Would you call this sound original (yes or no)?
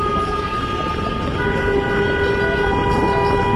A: yes